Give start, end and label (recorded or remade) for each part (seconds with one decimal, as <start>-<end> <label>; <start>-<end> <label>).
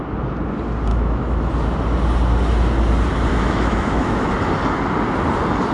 0.0-0.9 recorded; 0.9-1.5 remade; 1.5-3.3 recorded; 3.3-4.3 remade; 4.3-5.7 recorded